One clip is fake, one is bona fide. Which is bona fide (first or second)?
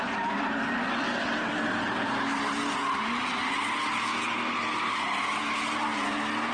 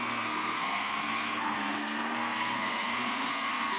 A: first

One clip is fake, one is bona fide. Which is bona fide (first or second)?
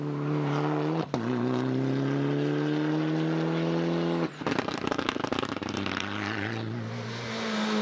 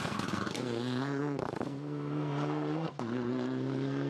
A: first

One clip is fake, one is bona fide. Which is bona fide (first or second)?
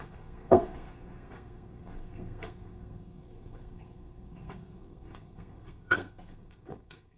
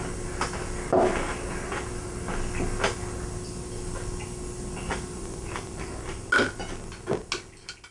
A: second